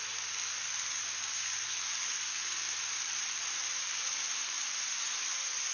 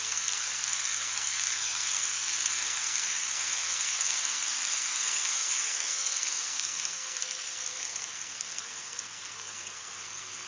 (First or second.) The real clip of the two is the first